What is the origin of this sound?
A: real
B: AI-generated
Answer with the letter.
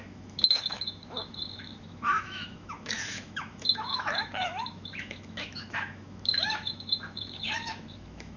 B